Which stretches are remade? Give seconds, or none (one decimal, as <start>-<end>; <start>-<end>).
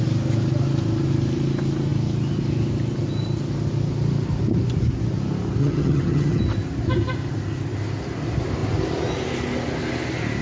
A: 5.6-6.4